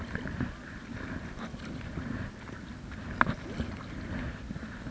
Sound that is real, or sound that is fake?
real